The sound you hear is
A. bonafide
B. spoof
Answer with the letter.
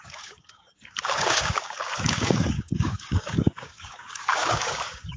B